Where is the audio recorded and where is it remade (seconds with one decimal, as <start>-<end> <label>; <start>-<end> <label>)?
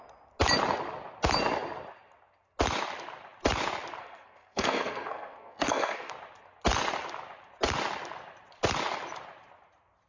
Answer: 0.0-4.0 recorded; 4.0-6.1 remade; 6.1-10.1 recorded